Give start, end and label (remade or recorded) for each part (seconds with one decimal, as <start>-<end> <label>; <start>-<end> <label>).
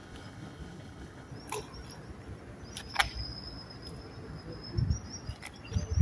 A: 0.0-1.3 remade; 1.3-6.0 recorded